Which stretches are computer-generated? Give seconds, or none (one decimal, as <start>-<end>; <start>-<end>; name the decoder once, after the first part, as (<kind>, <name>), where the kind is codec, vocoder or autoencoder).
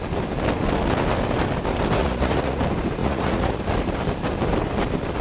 2.0-2.6 (vocoder, Vocos); 3.0-3.6